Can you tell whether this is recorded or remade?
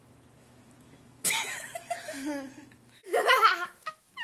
remade